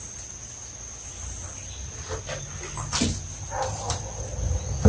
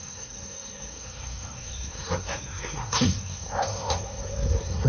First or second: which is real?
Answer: first